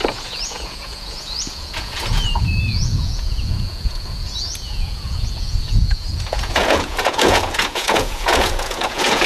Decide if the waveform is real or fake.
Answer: fake